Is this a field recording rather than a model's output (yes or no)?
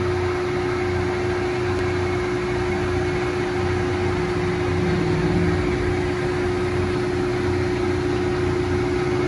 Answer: yes